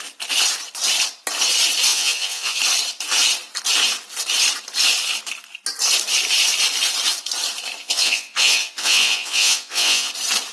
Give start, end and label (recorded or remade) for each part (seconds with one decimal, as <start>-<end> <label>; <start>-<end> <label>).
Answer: 0.0-1.9 recorded; 1.9-2.6 remade; 2.6-7.8 recorded; 7.8-10.1 remade; 10.1-10.5 recorded